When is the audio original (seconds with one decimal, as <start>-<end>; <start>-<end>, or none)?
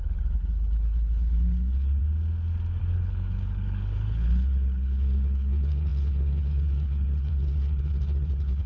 2.0-2.8